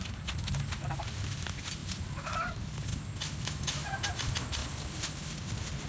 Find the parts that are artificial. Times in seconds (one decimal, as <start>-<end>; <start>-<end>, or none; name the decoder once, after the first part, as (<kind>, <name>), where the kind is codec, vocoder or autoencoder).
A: none